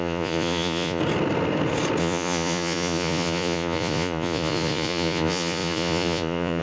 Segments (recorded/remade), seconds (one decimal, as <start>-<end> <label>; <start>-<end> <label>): 0.0-1.0 remade; 1.0-2.0 recorded; 2.0-6.6 remade